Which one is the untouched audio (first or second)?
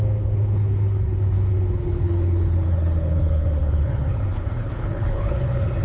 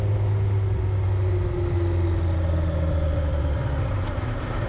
second